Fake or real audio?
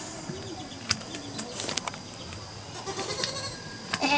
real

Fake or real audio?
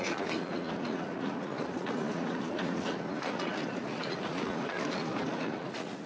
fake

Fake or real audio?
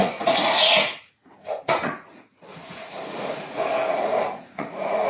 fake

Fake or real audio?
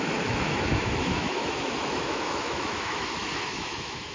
fake